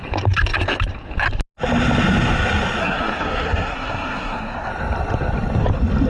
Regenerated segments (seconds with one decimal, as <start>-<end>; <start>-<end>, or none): 2.8-4.7

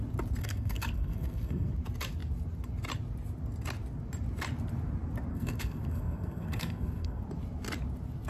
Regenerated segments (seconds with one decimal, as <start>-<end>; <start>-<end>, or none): 0.4-1.7; 5.3-7.2